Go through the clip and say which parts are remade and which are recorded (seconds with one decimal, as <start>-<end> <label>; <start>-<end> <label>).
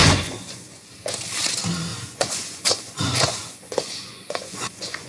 0.0-0.9 remade; 0.9-1.9 recorded; 1.9-5.1 remade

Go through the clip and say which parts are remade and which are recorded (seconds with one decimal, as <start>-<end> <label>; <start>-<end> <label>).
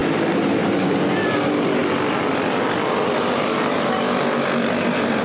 0.0-5.2 recorded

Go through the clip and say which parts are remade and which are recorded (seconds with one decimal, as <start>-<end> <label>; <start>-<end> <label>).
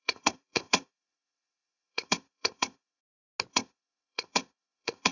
0.0-3.0 remade; 3.0-3.5 recorded; 3.5-5.1 remade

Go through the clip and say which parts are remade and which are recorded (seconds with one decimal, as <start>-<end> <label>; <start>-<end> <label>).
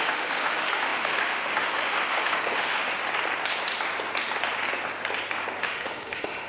0.0-2.9 remade; 2.9-5.6 recorded; 5.6-6.5 remade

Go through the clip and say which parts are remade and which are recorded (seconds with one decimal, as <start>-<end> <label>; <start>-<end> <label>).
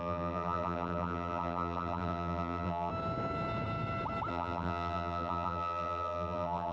0.0-2.9 remade; 2.9-4.3 recorded; 4.3-6.7 remade